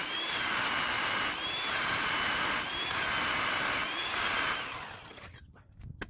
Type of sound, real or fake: real